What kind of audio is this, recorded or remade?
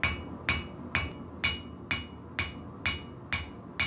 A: recorded